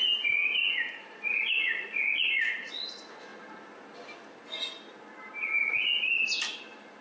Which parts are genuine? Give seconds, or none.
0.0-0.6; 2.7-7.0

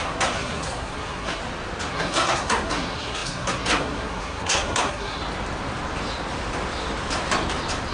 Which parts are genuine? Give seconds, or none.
1.4-1.9; 5.2-7.9

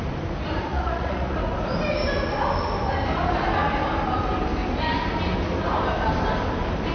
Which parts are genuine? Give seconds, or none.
0.0-0.7; 1.4-6.9